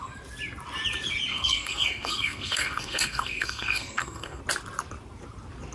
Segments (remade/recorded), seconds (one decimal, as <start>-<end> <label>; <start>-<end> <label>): 0.0-1.3 recorded; 1.3-4.4 remade; 4.4-5.7 recorded